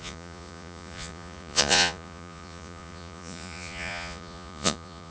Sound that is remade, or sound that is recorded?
remade